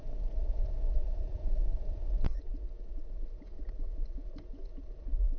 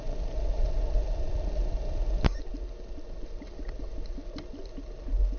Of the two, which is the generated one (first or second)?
first